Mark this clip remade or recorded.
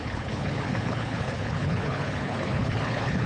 remade